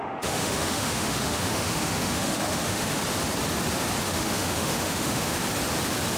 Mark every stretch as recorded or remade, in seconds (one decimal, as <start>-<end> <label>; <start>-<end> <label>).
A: 0.0-3.0 remade; 3.0-4.0 recorded; 4.0-5.4 remade; 5.4-6.2 recorded